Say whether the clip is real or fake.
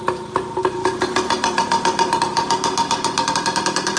real